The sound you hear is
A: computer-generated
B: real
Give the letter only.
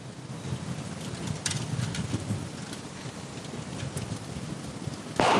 B